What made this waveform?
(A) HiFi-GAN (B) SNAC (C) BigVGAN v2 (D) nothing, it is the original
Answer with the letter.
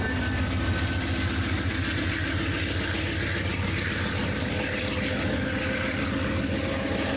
D